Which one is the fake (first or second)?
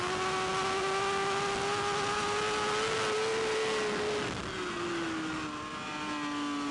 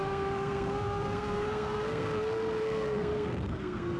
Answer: second